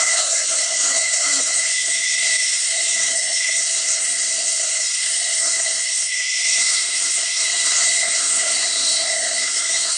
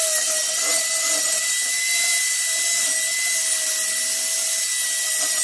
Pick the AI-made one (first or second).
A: first